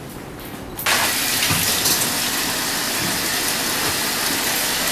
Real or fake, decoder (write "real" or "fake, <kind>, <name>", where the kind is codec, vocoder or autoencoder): real